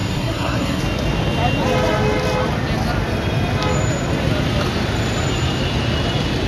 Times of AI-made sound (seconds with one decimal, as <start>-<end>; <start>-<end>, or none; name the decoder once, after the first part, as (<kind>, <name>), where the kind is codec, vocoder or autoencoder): 0.0-0.8 (codec, SNAC)